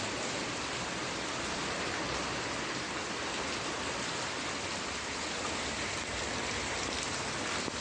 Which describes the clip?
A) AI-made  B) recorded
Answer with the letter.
B